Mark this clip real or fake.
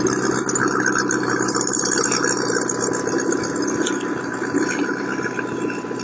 real